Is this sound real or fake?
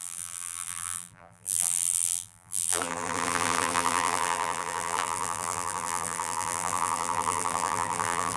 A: fake